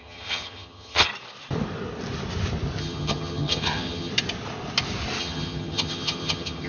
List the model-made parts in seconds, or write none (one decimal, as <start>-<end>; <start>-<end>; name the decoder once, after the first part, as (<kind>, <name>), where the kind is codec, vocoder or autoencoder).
0.0-1.1 (vocoder, HiFi-GAN); 2.8-4.1; 5.2-6.7